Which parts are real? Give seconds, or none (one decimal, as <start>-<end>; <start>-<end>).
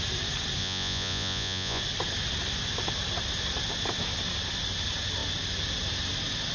0.0-0.6; 1.8-6.5